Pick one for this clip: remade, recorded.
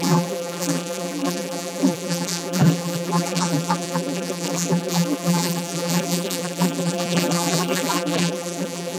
remade